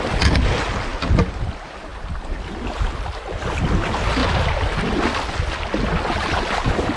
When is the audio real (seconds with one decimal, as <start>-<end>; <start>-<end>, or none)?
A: 0.0-7.0